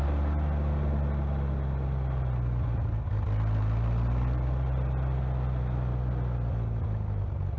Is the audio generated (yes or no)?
no